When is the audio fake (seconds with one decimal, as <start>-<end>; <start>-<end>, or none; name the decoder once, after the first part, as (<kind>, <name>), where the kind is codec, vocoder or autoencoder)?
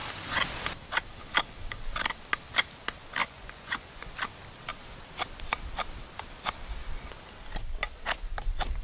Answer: 3.2-4.1 (vocoder, Vocos)